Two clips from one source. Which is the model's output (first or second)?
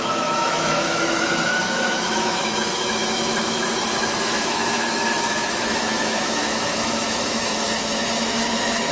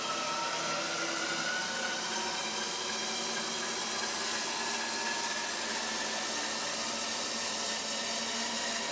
first